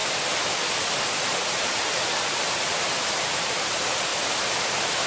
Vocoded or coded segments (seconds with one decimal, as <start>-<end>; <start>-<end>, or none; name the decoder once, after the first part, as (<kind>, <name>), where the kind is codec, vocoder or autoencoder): 3.1-4.1 (vocoder, BigVGAN v2)